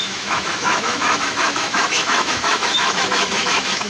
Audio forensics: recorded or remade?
remade